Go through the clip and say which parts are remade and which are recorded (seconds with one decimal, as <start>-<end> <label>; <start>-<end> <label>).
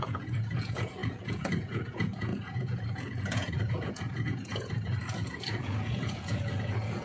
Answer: 0.0-7.0 remade